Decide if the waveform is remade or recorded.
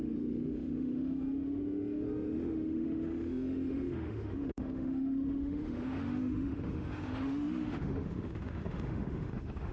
remade